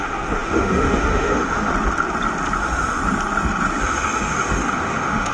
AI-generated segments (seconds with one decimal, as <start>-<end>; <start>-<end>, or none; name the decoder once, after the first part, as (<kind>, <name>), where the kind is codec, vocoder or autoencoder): 0.0-1.7 (autoencoder, DAC-VAE); 2.6-3.0; 3.8-5.3

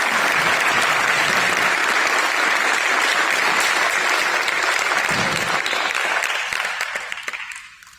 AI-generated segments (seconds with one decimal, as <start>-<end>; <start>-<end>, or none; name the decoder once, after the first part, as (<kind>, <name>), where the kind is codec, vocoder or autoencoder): none